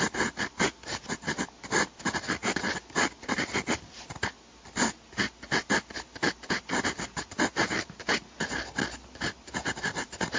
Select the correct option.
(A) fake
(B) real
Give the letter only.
B